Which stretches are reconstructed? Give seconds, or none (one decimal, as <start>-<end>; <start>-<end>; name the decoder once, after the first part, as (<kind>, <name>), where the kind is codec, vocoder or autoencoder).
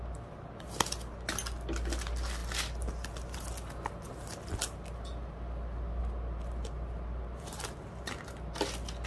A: none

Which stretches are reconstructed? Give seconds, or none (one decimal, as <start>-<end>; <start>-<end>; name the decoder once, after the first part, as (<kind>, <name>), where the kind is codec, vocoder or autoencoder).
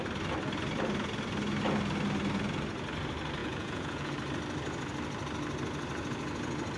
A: 3.4-4.1 (vocoder, Vocos)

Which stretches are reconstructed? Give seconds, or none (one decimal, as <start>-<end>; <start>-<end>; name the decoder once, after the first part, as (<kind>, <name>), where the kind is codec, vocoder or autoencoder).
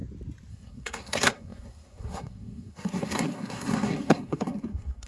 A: 0.5-5.1 (codec, SNAC)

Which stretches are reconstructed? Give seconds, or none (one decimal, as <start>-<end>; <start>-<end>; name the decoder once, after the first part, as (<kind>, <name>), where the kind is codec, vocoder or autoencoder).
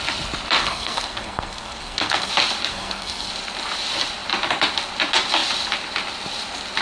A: 0.6-2.3 (codec, SNAC); 2.7-3.3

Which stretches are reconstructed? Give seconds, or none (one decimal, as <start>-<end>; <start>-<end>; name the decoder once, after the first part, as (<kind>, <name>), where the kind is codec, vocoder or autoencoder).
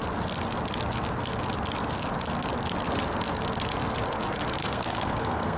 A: 4.6-5.6 (codec, SNAC)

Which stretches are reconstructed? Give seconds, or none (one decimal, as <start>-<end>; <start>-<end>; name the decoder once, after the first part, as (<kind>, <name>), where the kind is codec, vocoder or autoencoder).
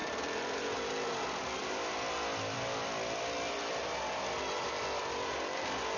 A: none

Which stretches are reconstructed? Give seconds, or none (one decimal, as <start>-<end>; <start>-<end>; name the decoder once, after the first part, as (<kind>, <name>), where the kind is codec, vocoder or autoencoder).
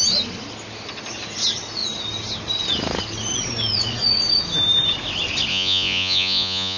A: 5.5-6.8 (vocoder, Vocos)